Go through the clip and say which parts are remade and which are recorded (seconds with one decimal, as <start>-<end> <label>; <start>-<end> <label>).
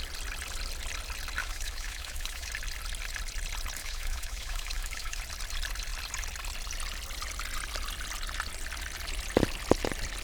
0.0-1.4 recorded; 1.4-2.5 remade; 2.5-3.8 recorded; 3.8-5.2 remade; 5.2-10.2 recorded